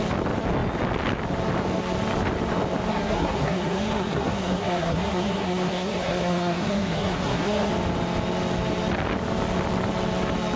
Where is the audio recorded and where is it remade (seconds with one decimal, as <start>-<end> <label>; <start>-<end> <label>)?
0.0-2.9 recorded; 2.9-7.7 remade; 7.7-10.6 recorded